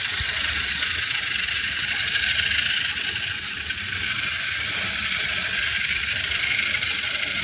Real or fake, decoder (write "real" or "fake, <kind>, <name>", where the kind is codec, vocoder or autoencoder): fake, vocoder, BigVGAN v2